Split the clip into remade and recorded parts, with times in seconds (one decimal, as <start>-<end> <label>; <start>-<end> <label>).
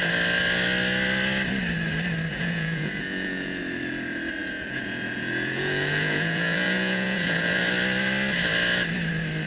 0.0-2.3 recorded; 2.3-3.6 remade; 3.6-4.4 recorded; 4.4-7.6 remade; 7.6-9.5 recorded